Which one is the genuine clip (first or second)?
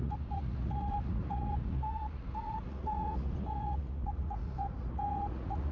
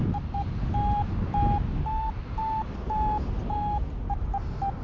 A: second